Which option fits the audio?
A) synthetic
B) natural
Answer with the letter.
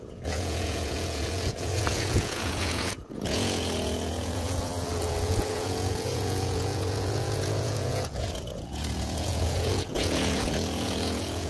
A